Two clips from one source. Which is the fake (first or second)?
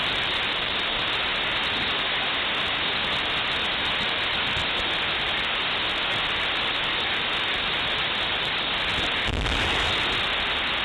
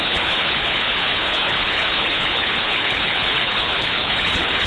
second